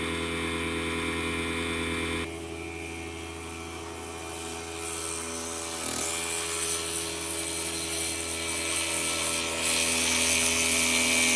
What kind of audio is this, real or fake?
real